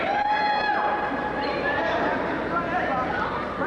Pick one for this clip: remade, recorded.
remade